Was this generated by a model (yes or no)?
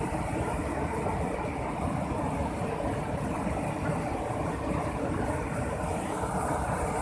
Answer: no